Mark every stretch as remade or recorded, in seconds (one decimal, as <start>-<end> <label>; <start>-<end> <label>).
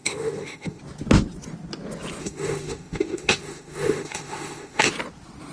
0.0-0.8 remade; 0.8-2.2 recorded; 2.2-4.9 remade; 4.9-5.5 recorded